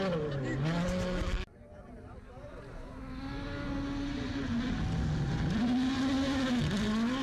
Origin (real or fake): real